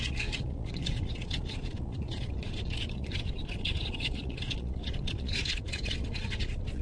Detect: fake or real fake